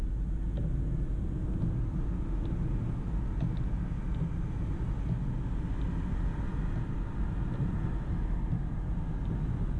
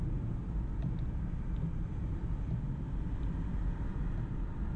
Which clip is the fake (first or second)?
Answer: second